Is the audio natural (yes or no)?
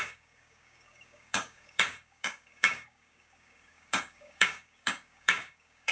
no